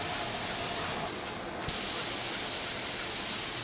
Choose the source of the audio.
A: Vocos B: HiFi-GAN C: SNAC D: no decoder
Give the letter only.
D